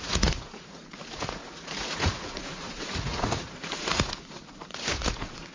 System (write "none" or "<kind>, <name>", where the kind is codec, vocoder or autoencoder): vocoder, Vocos